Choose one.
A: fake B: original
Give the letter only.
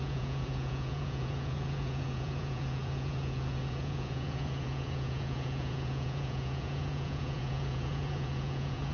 A